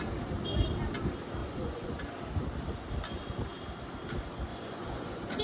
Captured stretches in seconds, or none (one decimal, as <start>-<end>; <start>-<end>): 0.0-1.4; 2.0-4.5